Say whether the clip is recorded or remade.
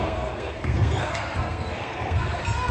remade